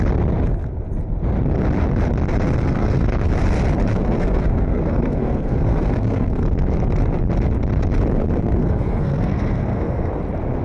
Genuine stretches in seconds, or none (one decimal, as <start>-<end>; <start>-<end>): 0.0-2.6; 3.3-3.9; 6.6-8.4; 10.1-10.6